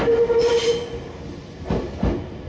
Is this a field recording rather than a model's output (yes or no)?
yes